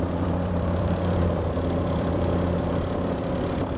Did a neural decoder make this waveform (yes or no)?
yes